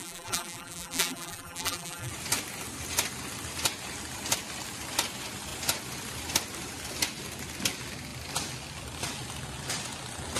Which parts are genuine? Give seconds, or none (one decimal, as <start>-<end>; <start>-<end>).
2.1-10.4